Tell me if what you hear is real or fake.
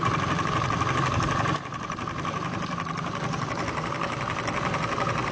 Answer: fake